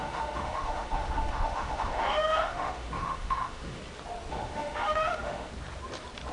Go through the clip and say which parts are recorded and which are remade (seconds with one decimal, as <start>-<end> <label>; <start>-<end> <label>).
0.0-3.8 remade; 3.8-4.3 recorded; 4.3-5.5 remade; 5.5-6.3 recorded